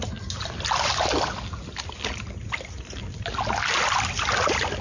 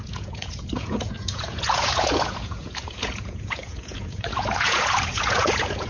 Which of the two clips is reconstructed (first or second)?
second